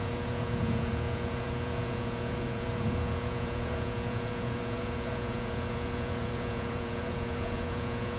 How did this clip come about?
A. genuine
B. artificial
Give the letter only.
B